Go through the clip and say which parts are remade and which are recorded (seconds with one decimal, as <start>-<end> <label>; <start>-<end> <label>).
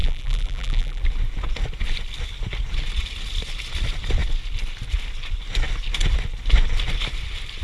0.0-1.0 remade; 1.0-7.6 recorded